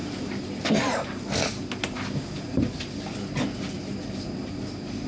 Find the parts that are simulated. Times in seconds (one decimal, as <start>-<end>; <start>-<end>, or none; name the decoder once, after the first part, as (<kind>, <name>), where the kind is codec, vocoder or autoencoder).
none